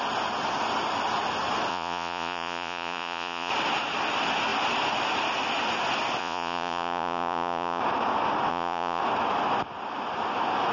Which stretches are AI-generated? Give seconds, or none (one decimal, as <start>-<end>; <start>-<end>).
1.7-3.5; 6.2-7.8; 8.5-9.0